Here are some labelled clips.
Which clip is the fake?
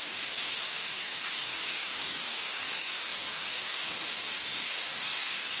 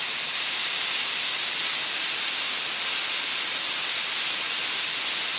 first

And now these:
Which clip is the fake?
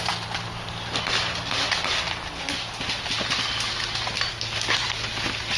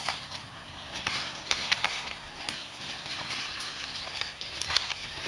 second